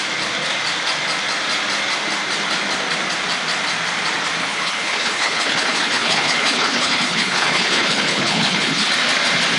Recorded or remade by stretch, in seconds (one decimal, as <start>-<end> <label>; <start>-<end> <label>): 0.0-4.4 recorded; 4.4-8.9 remade; 8.9-9.6 recorded